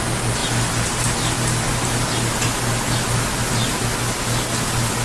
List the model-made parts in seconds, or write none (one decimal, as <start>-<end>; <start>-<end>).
none